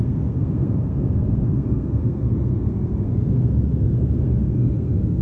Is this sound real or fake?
fake